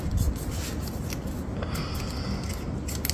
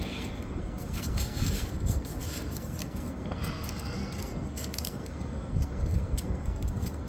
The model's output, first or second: second